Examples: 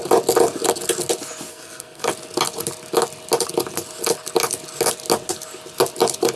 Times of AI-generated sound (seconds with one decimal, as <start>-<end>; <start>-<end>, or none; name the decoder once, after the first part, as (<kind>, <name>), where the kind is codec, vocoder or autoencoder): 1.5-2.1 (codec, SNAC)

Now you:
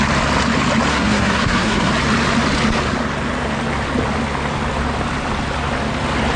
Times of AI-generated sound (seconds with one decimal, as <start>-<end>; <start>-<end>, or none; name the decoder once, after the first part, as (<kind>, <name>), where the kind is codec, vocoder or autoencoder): 0.9-1.9 (codec, SNAC)

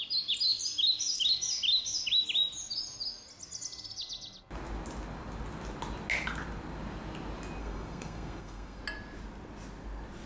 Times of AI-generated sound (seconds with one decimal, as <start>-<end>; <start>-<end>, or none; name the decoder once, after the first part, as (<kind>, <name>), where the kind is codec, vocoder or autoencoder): 7.6-8.8 (codec, SNAC)

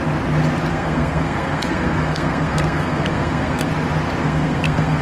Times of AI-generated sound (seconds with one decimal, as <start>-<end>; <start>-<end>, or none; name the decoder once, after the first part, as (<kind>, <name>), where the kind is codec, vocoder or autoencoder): 0.7-3.7 (codec, SNAC); 4.2-5.0